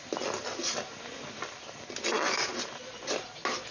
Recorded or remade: recorded